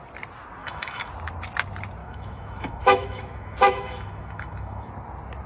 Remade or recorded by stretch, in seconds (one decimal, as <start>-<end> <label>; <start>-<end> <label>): 0.0-0.6 recorded; 0.6-1.1 remade; 1.1-2.0 recorded; 2.0-4.9 remade; 4.9-5.5 recorded